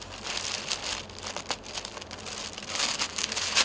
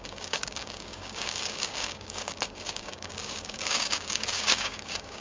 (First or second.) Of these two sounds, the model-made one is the second